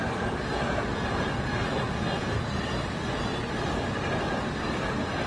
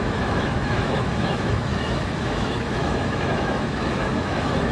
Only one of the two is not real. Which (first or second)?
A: second